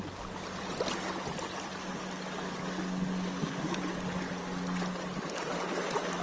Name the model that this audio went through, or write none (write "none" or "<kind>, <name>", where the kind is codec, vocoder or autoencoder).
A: none